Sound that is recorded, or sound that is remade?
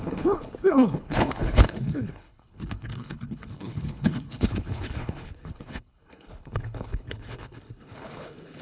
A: remade